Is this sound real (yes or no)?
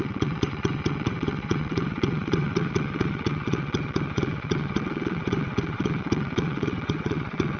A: no